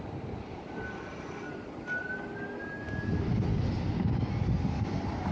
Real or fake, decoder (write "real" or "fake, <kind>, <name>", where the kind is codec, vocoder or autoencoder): real